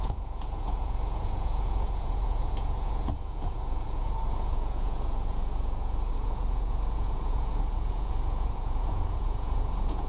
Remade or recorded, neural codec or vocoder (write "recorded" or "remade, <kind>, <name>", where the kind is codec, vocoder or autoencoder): remade, vocoder, Vocos